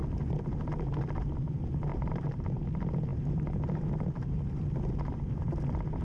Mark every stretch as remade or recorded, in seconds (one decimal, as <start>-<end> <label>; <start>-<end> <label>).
0.0-1.9 recorded; 1.9-2.5 remade; 2.5-3.1 recorded; 3.1-5.5 remade; 5.5-6.0 recorded